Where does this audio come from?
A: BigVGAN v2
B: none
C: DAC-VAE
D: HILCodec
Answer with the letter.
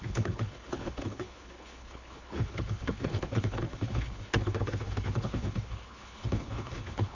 D